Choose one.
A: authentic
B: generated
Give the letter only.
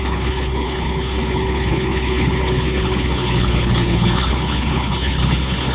B